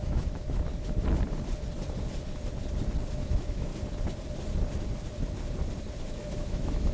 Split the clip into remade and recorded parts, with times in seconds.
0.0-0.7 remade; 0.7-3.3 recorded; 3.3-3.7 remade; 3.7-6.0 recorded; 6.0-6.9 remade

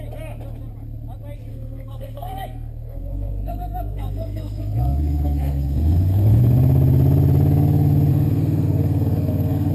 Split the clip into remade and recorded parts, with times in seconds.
0.0-1.5 recorded; 1.5-6.4 remade; 6.4-8.1 recorded; 8.1-9.7 remade